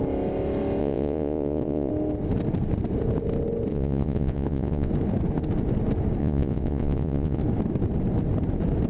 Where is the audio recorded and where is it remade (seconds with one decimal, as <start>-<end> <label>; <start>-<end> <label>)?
0.0-0.8 recorded; 0.8-1.9 remade; 1.9-3.7 recorded; 3.7-4.9 remade; 4.9-6.2 recorded; 6.2-7.4 remade; 7.4-8.9 recorded